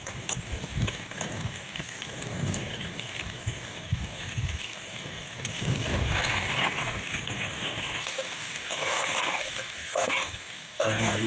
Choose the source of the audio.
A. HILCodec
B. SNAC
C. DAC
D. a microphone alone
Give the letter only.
C